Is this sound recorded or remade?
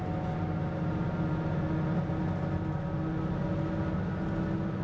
recorded